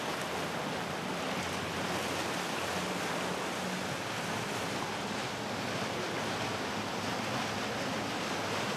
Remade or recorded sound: recorded